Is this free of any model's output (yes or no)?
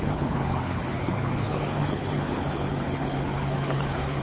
no